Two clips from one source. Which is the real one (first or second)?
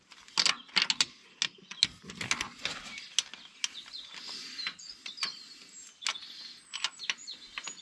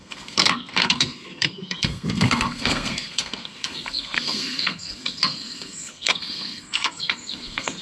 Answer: first